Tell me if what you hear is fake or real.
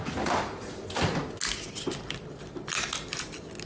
real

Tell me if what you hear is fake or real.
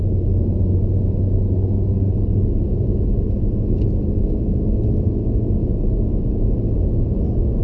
real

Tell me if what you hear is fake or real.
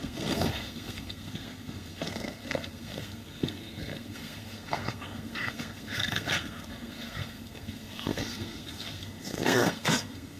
fake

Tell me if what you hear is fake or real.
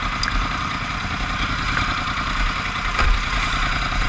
real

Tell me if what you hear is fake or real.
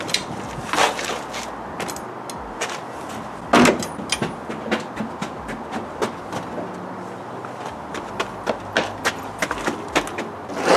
real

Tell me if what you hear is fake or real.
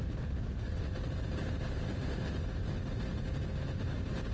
real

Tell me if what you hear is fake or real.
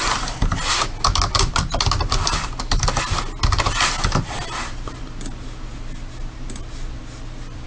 real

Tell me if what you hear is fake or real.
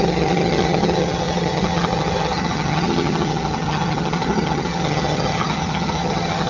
fake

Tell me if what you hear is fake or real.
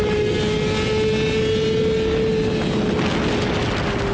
real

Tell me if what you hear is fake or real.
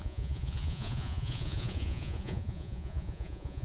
fake